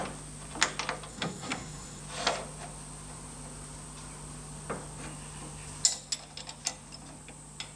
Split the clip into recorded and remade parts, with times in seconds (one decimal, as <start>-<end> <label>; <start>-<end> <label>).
0.0-1.1 recorded; 1.1-2.0 remade; 2.0-7.8 recorded